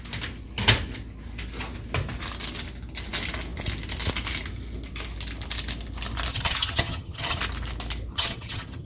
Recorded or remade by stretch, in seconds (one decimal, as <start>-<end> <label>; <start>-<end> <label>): 0.0-6.3 recorded; 6.3-7.4 remade; 7.4-8.1 recorded; 8.1-8.9 remade